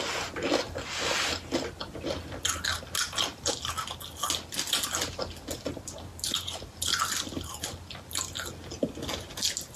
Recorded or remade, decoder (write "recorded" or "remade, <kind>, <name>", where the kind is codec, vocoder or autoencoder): recorded